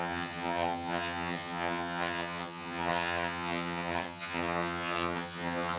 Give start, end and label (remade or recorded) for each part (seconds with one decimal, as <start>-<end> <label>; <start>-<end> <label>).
0.0-5.8 remade